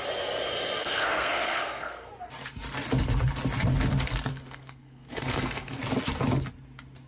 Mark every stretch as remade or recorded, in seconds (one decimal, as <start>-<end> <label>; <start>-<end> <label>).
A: 0.0-0.8 recorded; 0.8-2.1 remade; 2.1-4.3 recorded; 4.3-5.8 remade; 5.8-7.1 recorded